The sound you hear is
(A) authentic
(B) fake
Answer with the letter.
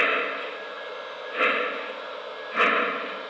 A